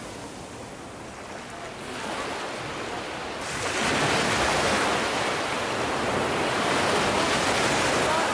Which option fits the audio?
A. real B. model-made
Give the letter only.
A